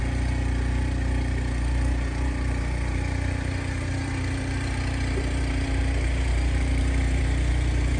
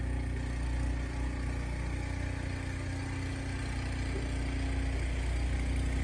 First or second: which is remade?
first